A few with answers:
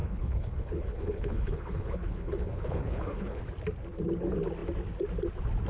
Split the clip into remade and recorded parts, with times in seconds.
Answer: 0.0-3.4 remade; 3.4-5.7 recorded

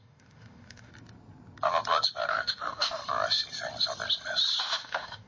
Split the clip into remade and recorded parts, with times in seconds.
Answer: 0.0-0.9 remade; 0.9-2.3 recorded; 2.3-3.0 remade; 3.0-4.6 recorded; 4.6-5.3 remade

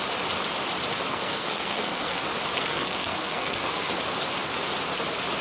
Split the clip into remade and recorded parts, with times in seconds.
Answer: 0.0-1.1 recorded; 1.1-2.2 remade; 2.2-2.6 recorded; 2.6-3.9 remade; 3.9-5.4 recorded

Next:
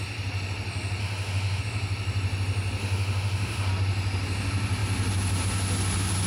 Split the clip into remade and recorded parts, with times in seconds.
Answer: 0.0-1.0 recorded; 1.0-1.6 remade; 1.6-2.8 recorded; 2.8-3.7 remade; 3.7-6.3 recorded

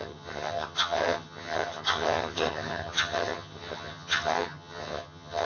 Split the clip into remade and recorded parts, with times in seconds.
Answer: 0.0-5.4 remade

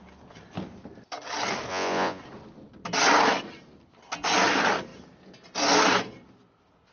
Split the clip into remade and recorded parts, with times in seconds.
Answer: 0.0-1.7 recorded; 1.7-2.2 remade; 2.2-6.9 recorded

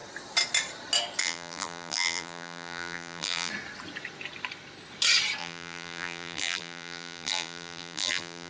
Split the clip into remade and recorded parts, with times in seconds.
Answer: 0.0-1.2 recorded; 1.2-3.5 remade; 3.5-5.4 recorded; 5.4-8.5 remade